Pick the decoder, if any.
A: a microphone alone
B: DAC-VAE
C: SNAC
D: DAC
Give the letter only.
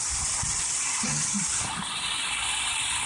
A